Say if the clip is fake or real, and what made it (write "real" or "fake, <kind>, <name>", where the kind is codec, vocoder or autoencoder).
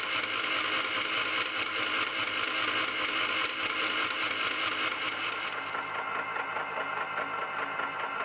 real